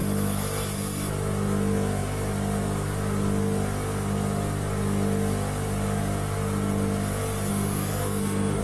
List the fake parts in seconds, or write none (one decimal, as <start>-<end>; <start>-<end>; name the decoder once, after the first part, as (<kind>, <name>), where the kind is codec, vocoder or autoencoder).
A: 7.5-8.6 (autoencoder, DAC-VAE)